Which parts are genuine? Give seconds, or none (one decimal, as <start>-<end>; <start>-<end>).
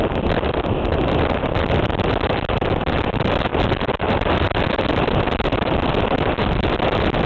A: 0.0-7.3